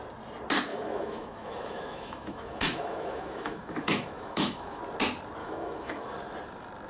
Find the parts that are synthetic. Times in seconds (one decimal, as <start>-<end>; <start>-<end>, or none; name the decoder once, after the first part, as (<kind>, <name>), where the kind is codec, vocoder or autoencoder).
0.7-4.8 (autoencoder, DAC-VAE); 5.4-6.1